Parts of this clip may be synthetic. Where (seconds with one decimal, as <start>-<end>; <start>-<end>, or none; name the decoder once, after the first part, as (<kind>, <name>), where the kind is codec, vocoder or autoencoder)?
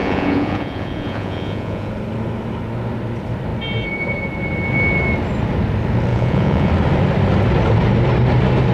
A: 0.0-1.9 (vocoder, Vocos); 6.1-6.7